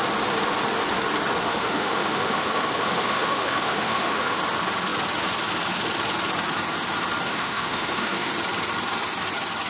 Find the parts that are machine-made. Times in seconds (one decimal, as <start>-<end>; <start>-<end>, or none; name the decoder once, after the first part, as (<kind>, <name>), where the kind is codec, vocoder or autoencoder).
1.4-4.4 (autoencoder, DAC-VAE); 7.3-8.3